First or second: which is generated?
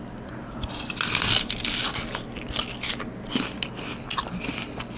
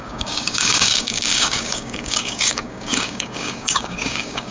second